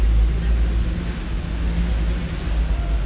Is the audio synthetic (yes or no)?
no